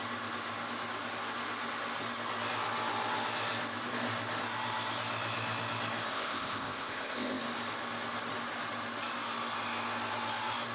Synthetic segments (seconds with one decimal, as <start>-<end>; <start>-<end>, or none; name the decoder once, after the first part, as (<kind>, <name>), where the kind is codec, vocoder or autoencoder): 6.1-7.4 (codec, ZipCodec)

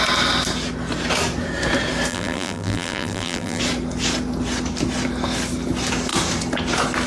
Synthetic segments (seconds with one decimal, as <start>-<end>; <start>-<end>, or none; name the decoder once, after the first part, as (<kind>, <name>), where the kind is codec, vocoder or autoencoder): 2.1-3.6 (vocoder, BigVGAN v2)

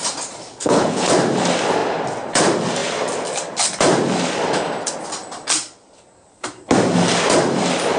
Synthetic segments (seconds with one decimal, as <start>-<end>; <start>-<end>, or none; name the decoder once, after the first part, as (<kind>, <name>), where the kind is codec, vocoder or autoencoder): 0.5-1.1 (codec, HILCodec)

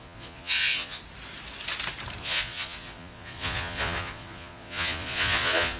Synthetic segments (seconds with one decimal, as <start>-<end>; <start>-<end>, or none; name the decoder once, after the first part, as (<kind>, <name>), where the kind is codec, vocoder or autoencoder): 0.0-1.0 (vocoder, Vocos); 2.2-5.8

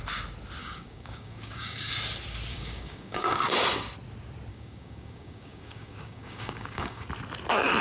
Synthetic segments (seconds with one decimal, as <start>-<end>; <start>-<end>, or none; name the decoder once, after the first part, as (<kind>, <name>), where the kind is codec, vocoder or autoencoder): 0.6-1.9 (codec, DAC); 2.5-3.5; 4.5-7.1